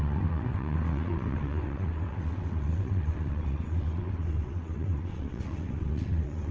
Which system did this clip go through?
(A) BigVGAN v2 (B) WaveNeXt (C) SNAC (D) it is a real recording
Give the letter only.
B